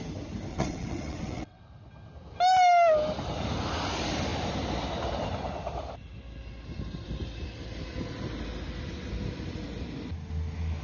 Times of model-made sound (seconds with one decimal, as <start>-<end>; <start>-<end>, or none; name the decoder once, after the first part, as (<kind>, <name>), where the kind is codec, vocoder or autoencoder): 0.5-1.6 (vocoder, WaveNeXt)